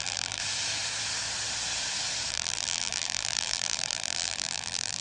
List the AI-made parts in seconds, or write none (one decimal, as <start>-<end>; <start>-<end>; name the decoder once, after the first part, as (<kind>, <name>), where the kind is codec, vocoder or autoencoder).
0.0-0.4 (vocoder, BigVGAN v2); 2.3-5.0